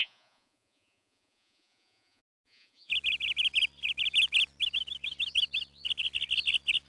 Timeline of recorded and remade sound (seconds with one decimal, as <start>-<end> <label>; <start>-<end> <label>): 0.0-2.9 remade; 2.9-6.9 recorded